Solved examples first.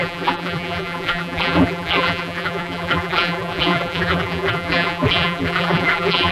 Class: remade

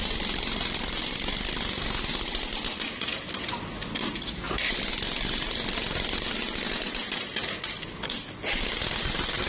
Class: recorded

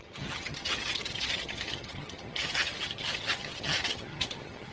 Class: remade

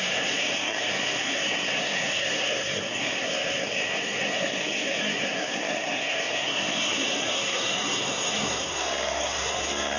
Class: remade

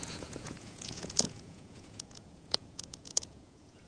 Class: remade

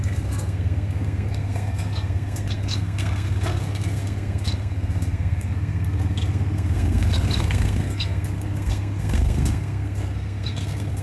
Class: remade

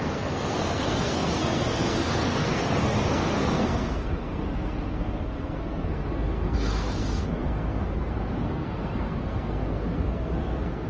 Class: remade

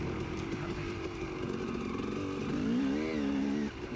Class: recorded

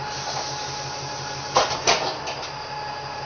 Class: recorded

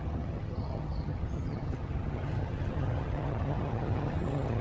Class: remade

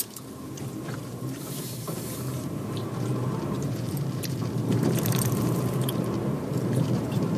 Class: remade